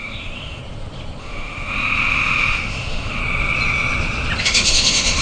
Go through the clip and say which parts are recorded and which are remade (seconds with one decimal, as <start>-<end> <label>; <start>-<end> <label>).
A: 0.0-0.6 remade; 0.6-1.2 recorded; 1.2-3.2 remade; 3.2-4.4 recorded; 4.4-5.2 remade